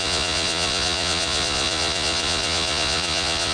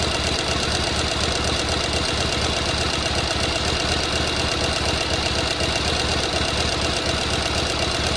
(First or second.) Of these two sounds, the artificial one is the first